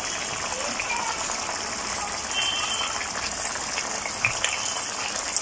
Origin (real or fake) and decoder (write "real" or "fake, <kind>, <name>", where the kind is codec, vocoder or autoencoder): real